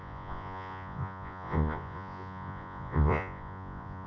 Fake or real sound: fake